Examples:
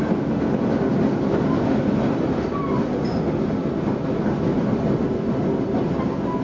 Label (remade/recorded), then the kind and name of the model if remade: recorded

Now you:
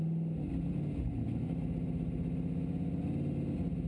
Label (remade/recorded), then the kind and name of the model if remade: recorded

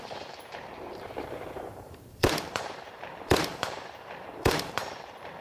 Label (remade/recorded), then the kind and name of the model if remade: remade, vocoder, BigVGAN v2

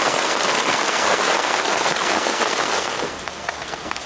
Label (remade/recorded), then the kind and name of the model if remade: remade, codec, SNAC